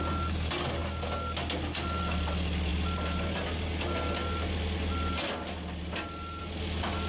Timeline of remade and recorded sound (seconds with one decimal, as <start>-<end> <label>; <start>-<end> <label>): 0.0-7.1 recorded